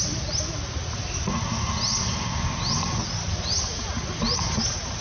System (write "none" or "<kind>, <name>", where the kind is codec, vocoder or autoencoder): none